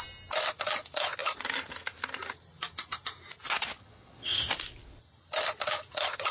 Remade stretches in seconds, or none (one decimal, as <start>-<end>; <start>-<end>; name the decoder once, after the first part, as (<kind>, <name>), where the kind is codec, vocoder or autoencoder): 3.8-4.5 (vocoder, HiFi-GAN)